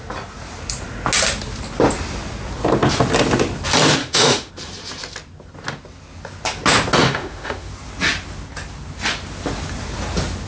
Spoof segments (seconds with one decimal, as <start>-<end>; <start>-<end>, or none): 4.0-4.5; 7.0-7.7